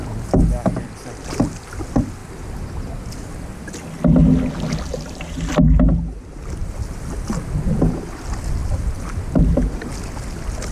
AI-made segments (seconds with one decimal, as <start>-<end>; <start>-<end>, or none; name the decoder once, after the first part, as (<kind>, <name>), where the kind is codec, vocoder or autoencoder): 8.6-9.9 (vocoder, BigVGAN v2)